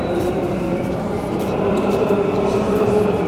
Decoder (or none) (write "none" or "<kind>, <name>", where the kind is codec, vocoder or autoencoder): vocoder, BigVGAN v2